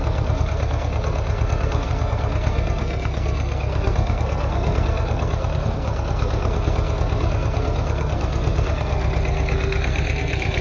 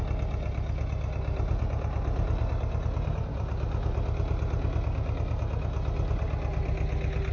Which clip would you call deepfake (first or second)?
first